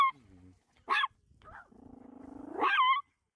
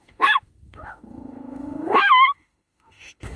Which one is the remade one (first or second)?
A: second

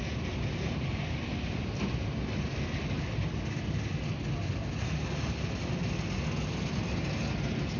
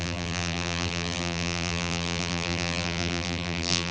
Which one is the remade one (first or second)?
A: second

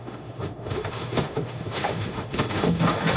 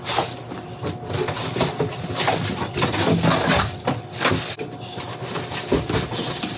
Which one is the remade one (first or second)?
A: first